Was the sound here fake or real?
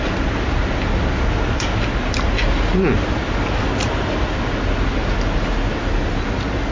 real